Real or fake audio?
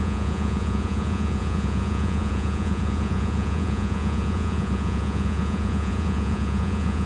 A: fake